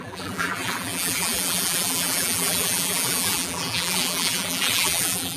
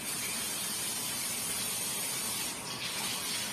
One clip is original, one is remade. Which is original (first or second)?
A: second